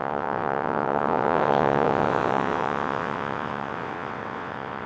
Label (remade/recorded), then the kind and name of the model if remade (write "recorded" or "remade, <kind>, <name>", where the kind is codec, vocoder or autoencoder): remade, vocoder, WaveNeXt